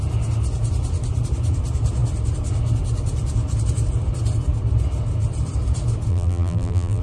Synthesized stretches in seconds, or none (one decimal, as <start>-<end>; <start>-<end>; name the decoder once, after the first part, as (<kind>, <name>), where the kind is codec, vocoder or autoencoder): 6.1-7.0 (vocoder, BigVGAN v2)